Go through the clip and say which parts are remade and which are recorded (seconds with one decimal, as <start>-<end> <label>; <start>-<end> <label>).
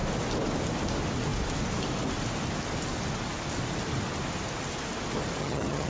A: 0.0-5.4 recorded; 5.4-5.9 remade